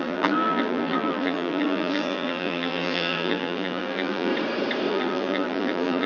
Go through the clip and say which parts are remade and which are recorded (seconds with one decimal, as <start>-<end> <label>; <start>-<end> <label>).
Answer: 0.0-4.3 remade; 4.3-4.9 recorded; 4.9-6.1 remade